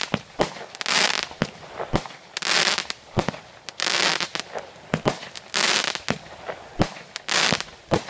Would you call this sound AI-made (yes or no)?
no